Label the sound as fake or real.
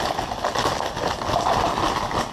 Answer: real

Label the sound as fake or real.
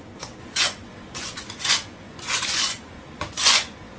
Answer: fake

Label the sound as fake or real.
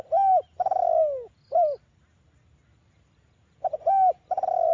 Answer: real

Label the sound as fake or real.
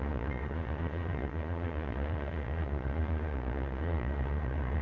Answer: fake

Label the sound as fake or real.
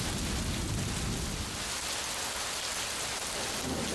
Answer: real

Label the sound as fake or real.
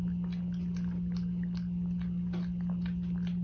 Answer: real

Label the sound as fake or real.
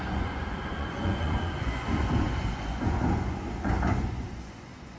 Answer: fake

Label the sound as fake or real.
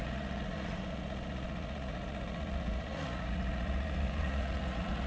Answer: fake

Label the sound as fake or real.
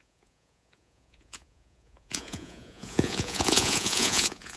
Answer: fake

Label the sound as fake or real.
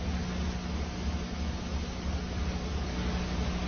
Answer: real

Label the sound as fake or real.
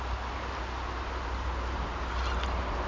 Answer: real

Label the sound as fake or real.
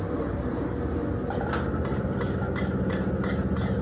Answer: real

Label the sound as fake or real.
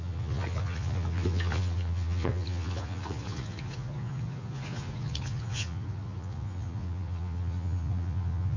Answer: fake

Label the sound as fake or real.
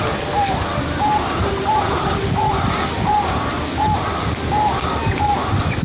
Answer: real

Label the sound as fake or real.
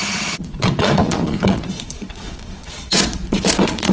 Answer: fake